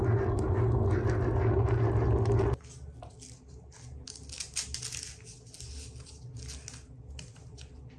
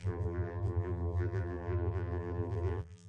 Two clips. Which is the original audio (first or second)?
first